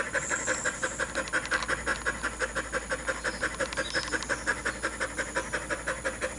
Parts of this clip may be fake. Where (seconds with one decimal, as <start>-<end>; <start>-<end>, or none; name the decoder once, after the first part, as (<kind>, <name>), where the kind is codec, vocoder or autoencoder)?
none

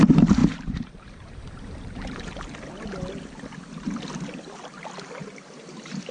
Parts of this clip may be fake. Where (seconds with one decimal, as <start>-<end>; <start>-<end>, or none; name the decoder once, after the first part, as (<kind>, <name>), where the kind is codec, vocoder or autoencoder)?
0.4-2.3 (vocoder, BigVGAN v2); 5.2-6.1

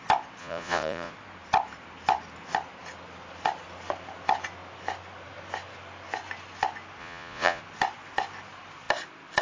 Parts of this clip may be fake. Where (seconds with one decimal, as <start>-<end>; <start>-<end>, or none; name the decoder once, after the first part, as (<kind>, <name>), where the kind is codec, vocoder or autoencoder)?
0.4-1.1 (vocoder, Vocos); 7.0-7.6

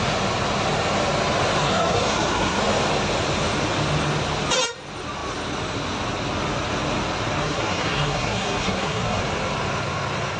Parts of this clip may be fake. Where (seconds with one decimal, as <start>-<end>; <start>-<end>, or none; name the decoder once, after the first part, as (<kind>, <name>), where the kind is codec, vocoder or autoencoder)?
1.6-2.6 (codec, SNAC); 7.4-9.2

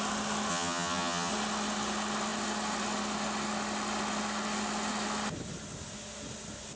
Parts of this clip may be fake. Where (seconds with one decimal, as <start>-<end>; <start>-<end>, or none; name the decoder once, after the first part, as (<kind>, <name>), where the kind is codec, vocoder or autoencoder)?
0.5-1.3 (vocoder, HiFi-GAN)

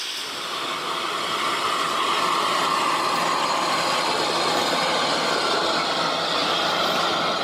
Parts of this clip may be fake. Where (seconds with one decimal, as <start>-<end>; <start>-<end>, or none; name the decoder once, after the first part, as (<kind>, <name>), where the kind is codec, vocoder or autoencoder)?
none

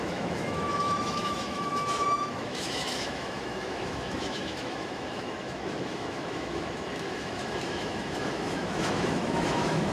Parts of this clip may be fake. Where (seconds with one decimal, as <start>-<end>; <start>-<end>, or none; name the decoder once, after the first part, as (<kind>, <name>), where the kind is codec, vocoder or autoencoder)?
0.0-9.9 (autoencoder, DAC-VAE)